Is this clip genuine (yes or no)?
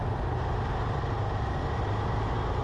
yes